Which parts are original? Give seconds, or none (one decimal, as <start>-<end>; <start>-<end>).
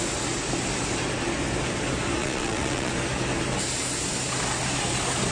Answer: 0.0-2.2; 2.9-5.3